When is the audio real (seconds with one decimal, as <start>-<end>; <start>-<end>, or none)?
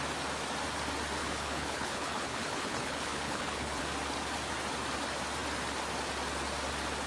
0.0-1.2; 3.8-7.1